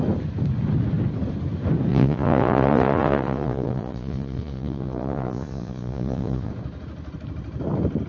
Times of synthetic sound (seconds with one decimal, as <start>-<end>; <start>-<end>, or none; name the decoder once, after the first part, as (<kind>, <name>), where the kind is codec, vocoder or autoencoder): 1.9-6.5 (vocoder, Vocos)